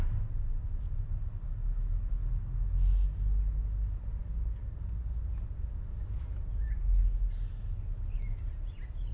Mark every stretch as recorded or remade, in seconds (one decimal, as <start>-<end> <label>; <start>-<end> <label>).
0.0-6.0 recorded; 6.0-6.8 remade; 6.8-9.1 recorded